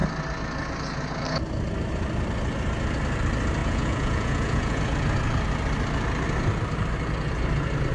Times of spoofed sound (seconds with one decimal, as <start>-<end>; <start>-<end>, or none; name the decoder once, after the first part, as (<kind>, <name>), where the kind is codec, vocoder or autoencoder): 3.6-4.8 (vocoder, Vocos)